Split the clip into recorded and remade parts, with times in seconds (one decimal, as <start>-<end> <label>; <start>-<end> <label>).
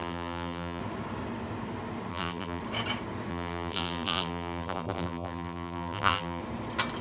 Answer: 0.0-0.8 remade; 0.8-2.1 recorded; 2.1-2.6 remade; 2.6-3.3 recorded; 3.3-6.4 remade; 6.4-7.0 recorded